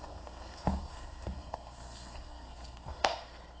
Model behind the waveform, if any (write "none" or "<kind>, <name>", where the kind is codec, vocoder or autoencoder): codec, SNAC